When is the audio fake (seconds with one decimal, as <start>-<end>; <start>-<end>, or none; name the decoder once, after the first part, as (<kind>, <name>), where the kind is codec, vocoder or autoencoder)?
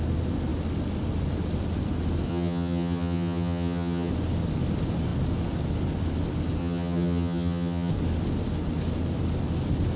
2.3-4.1 (vocoder, HiFi-GAN); 6.6-7.9